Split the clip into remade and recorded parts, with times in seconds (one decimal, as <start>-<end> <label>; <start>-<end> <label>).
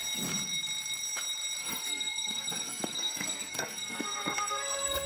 0.0-1.6 recorded; 1.6-5.1 remade